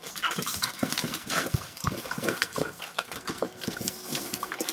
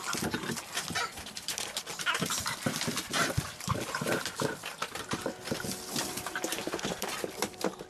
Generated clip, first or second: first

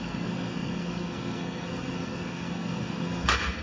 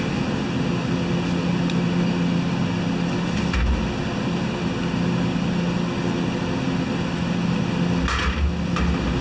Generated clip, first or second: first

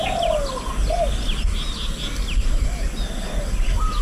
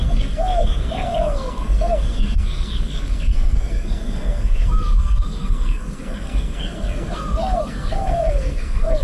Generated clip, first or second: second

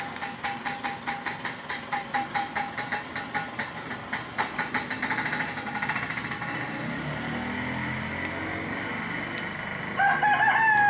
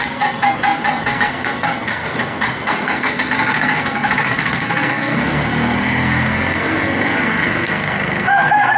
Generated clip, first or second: second